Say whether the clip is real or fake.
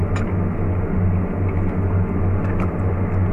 real